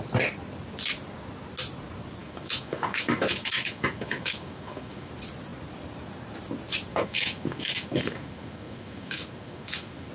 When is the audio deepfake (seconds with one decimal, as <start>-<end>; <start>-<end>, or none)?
2.2-5.1; 6.9-10.1